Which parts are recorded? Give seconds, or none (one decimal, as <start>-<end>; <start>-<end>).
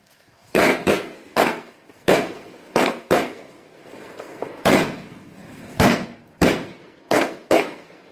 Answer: none